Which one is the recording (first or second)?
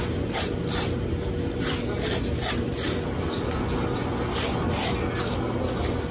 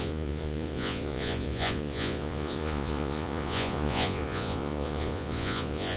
first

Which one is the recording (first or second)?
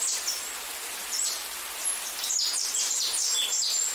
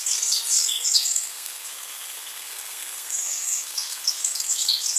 first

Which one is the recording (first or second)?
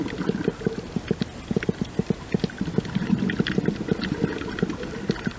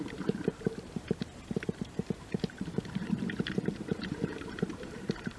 first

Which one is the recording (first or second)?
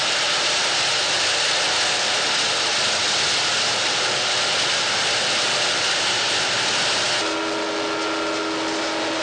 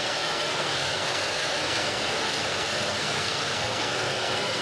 first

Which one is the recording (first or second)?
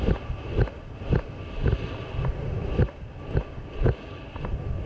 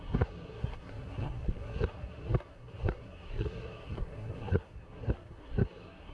first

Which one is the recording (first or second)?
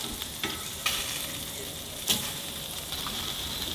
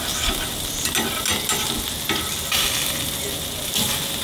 second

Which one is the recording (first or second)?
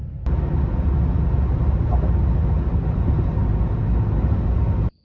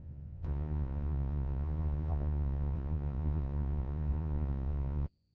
first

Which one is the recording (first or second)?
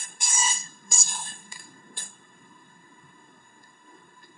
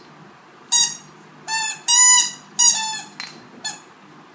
second